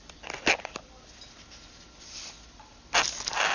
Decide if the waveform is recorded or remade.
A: recorded